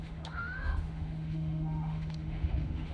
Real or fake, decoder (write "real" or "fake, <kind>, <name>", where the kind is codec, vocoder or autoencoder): fake, autoencoder, DAC-VAE